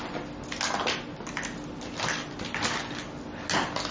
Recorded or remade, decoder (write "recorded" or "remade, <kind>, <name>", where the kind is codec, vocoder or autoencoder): recorded